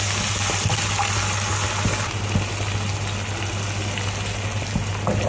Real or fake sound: real